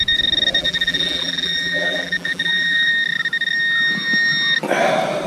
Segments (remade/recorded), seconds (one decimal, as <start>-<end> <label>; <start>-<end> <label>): 0.0-0.6 recorded; 0.6-2.9 remade; 2.9-5.3 recorded